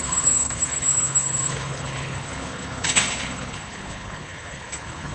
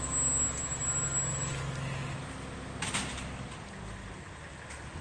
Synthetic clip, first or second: first